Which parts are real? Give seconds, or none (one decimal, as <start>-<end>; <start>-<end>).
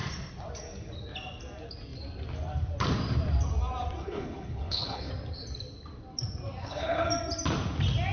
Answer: 0.0-4.0; 5.1-6.6; 7.1-8.1